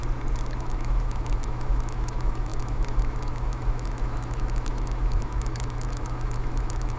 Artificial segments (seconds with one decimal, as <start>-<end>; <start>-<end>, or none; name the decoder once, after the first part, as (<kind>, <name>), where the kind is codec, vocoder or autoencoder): 0.6-7.0 (autoencoder, DAC-VAE)